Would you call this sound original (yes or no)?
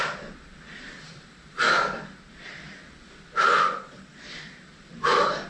no